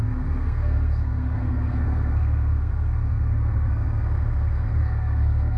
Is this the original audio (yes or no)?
no